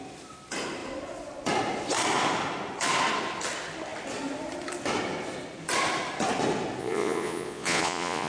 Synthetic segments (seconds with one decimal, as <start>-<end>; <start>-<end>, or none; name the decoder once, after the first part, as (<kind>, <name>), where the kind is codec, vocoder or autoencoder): 6.8-8.3 (vocoder, Vocos)